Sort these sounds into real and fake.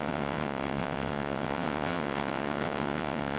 fake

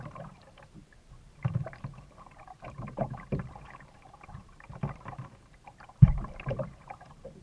fake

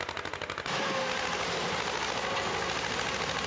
real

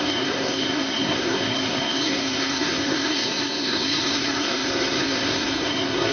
fake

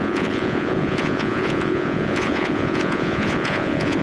fake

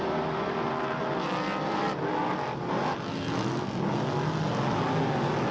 real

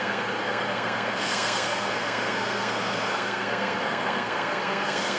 fake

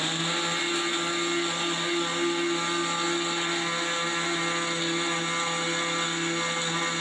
real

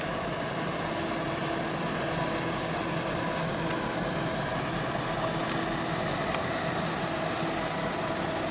real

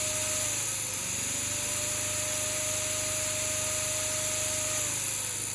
real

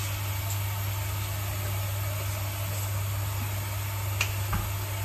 real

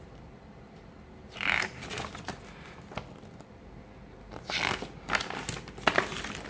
real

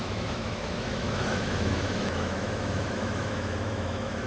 fake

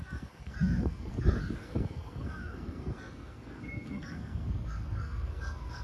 fake